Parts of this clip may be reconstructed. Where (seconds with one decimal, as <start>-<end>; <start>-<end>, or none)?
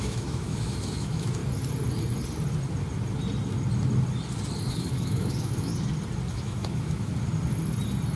0.0-1.4; 4.7-5.7; 6.3-7.1